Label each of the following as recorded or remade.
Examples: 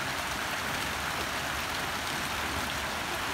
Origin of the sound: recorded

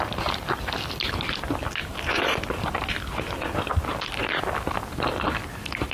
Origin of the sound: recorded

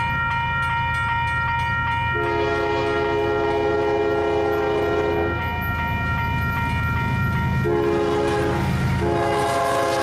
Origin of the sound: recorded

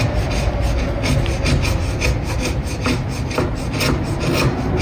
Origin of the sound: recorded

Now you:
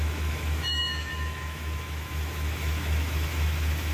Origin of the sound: remade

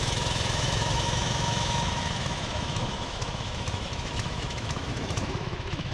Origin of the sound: remade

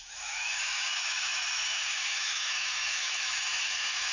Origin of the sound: remade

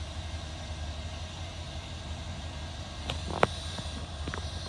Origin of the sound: recorded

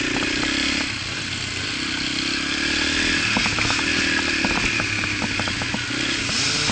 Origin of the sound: recorded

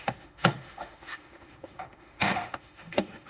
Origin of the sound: remade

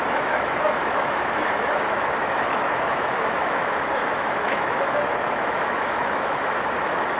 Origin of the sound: remade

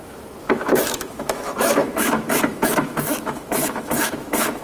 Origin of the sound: remade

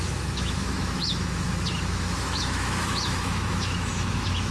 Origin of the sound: remade